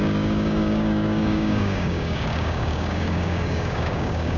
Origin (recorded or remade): remade